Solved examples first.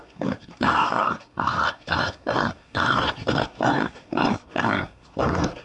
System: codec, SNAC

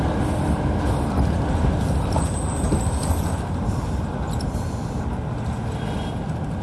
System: none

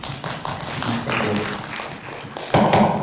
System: none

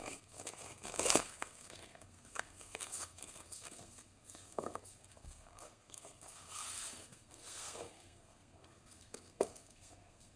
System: codec, SNAC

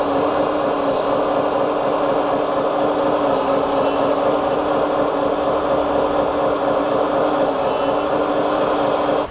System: none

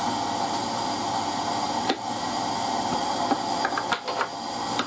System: none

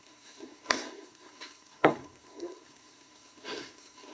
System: codec, SNAC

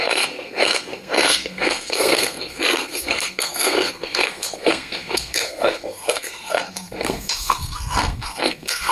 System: codec, SNAC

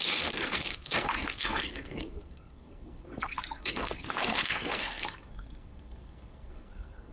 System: codec, SNAC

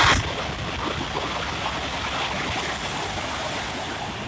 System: none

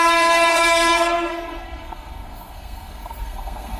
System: codec, SNAC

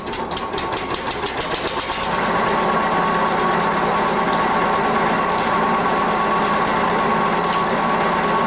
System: none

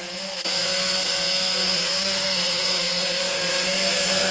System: codec, SNAC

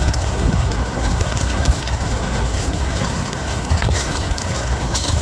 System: codec, SNAC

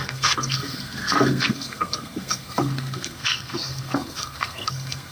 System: codec, SNAC